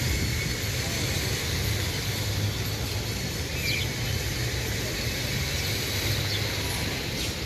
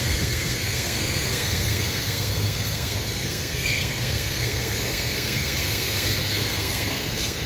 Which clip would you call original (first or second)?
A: first